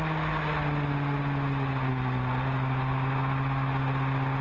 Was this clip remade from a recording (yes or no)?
no